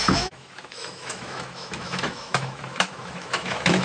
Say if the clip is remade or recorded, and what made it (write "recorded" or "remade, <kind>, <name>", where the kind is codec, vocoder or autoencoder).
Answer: remade, autoencoder, DAC-VAE